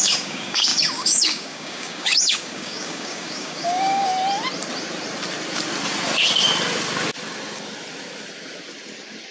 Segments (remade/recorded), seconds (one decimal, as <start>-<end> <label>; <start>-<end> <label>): 0.0-4.1 remade; 4.1-9.3 recorded